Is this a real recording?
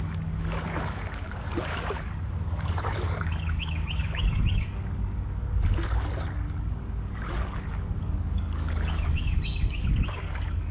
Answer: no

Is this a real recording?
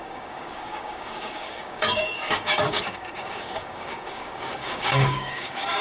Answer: no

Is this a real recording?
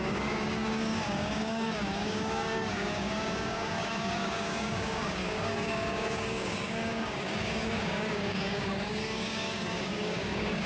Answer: no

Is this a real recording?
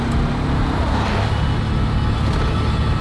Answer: yes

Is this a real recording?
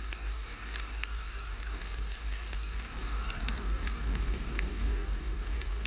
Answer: no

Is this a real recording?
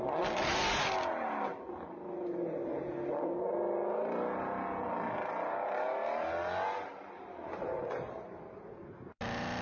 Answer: yes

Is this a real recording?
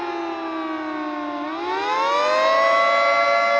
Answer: yes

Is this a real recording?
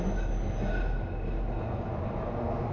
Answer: yes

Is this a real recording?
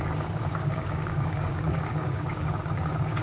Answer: no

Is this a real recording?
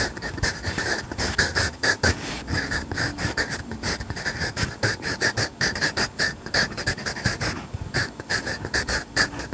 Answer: no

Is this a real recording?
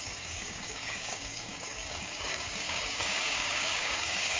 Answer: no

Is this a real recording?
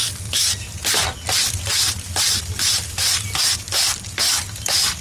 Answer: yes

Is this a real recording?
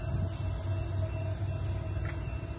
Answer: yes